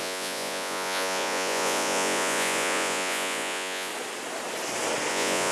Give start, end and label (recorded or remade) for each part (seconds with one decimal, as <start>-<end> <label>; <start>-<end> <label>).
0.0-3.9 remade; 3.9-5.1 recorded; 5.1-5.5 remade